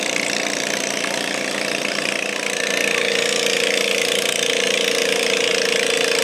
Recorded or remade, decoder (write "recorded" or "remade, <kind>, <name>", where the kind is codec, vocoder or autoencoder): recorded